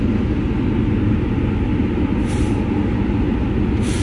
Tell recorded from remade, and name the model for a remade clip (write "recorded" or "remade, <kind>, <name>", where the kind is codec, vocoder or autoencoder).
recorded